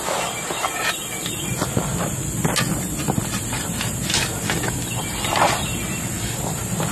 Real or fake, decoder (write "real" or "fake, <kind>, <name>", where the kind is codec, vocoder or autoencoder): real